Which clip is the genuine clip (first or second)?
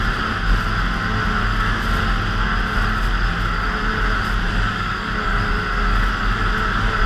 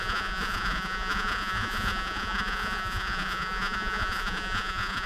first